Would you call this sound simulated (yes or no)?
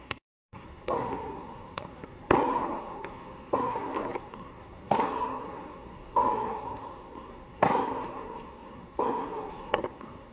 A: yes